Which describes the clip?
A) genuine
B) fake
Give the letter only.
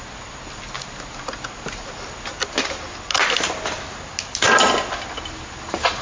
A